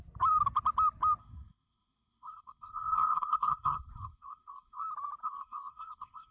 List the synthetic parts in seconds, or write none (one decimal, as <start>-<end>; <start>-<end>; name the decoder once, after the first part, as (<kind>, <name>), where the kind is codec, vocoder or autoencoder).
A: 1.2-4.8 (codec, SNAC); 5.2-6.3